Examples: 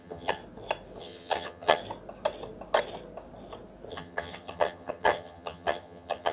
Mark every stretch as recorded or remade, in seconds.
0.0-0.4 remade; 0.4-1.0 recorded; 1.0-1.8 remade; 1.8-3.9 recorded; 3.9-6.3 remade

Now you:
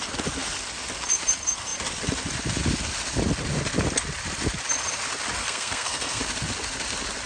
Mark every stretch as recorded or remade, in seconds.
0.0-5.4 recorded; 5.4-6.2 remade; 6.2-7.3 recorded

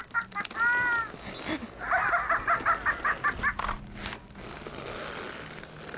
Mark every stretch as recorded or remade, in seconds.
0.0-6.0 recorded

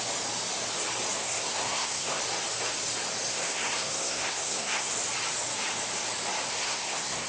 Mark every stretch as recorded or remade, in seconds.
0.0-1.2 recorded; 1.2-2.2 remade; 2.2-3.3 recorded; 3.3-4.9 remade; 4.9-6.5 recorded; 6.5-7.3 remade

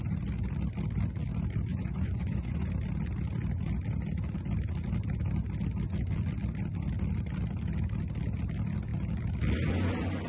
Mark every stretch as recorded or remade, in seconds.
0.0-1.7 recorded; 1.7-2.7 remade; 2.7-10.3 recorded

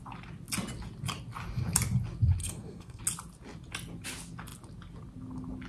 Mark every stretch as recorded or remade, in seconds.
0.0-2.4 recorded; 2.4-3.0 remade; 3.0-5.7 recorded

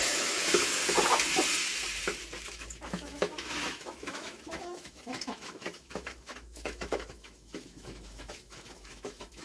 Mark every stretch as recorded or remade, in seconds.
0.0-0.8 remade; 0.8-2.4 recorded; 2.4-9.4 remade

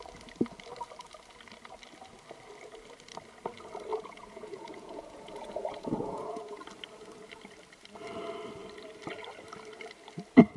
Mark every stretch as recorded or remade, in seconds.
0.0-3.9 recorded; 3.9-6.6 remade; 6.6-10.6 recorded